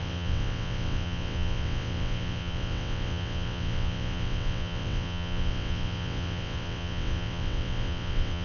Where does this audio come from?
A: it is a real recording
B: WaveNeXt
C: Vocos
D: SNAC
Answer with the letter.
B